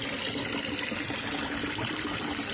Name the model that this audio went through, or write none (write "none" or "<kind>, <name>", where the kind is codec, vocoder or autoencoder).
none